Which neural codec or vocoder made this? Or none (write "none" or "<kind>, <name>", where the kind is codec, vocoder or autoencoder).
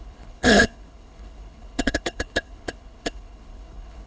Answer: codec, HILCodec